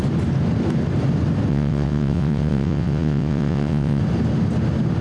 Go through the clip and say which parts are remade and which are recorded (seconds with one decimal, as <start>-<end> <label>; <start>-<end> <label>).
0.0-1.5 recorded; 1.5-4.0 remade; 4.0-5.0 recorded